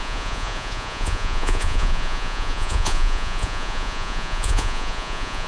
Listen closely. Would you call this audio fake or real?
fake